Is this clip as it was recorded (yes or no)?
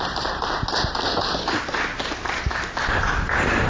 yes